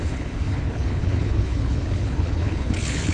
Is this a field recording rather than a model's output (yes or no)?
no